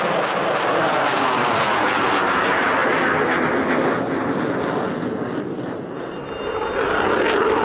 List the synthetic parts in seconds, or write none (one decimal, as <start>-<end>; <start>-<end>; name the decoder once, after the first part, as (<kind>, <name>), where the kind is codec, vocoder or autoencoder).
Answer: none